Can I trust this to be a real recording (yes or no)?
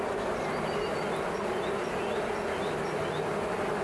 yes